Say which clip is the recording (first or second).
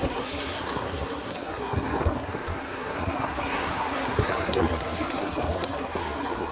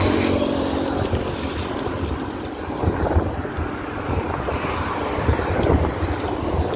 second